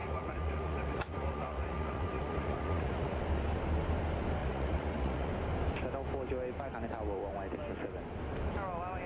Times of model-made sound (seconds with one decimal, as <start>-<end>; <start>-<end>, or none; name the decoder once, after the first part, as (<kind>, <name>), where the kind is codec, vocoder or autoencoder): 0.0-3.2 (vocoder, Vocos); 4.4-5.3